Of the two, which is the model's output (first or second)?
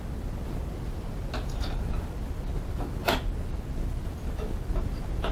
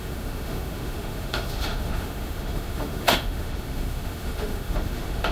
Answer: second